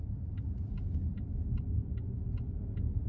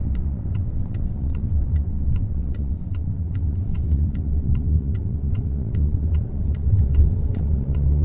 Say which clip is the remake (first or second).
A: second